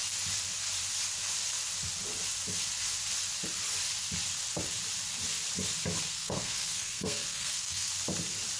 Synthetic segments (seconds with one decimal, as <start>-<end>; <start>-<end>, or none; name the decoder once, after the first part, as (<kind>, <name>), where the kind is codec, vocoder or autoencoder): 6.1-7.9 (codec, SNAC)